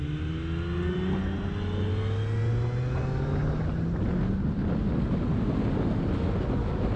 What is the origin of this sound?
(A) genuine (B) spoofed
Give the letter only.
A